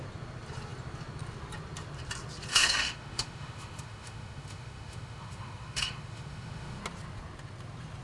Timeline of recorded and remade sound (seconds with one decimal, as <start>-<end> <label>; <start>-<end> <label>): 0.0-2.5 recorded; 2.5-6.8 remade; 6.8-8.0 recorded